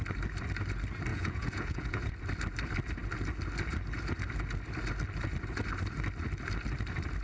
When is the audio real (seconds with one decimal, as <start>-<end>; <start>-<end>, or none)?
0.0-1.1; 2.1-7.2